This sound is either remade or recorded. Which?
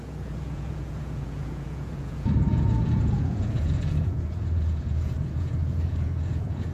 remade